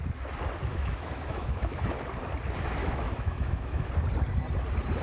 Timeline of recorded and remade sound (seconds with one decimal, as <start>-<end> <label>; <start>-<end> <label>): 0.0-0.7 recorded; 0.7-1.8 remade; 1.8-2.8 recorded; 2.8-3.9 remade; 3.9-5.0 recorded